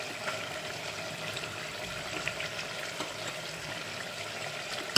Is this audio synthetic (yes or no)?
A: yes